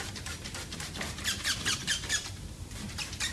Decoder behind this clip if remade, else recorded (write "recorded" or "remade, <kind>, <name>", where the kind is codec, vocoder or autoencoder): remade, vocoder, BigVGAN v2